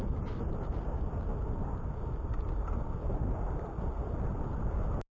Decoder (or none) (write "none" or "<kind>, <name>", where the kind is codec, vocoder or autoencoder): none